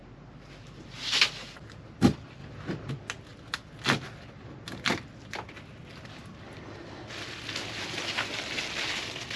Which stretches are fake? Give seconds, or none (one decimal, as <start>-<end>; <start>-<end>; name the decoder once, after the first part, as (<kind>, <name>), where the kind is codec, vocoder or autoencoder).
0.0-1.0 (vocoder, BigVGAN v2); 2.4-2.9